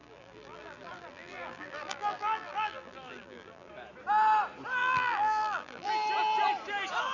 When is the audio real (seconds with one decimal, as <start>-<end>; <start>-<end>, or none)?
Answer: 3.7-4.8; 5.9-7.1